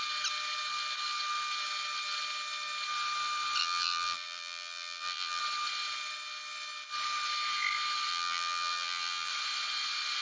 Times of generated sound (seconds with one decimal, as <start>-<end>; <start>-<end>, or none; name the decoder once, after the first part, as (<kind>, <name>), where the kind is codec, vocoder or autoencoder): 3.6-5.4 (vocoder, BigVGAN v2); 8.1-9.3